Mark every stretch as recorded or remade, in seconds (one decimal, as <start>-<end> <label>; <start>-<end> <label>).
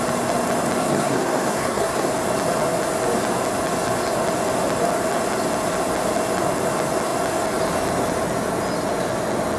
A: 0.0-0.8 recorded; 0.8-2.1 remade; 2.1-9.6 recorded